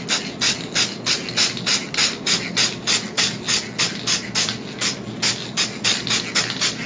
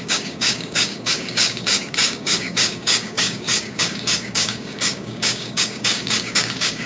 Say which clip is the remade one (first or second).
second